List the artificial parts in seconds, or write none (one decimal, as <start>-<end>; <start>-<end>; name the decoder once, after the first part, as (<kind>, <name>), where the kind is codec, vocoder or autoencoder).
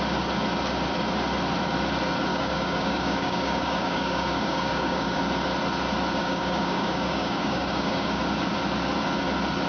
2.3-5.2 (codec, DAC); 6.2-8.2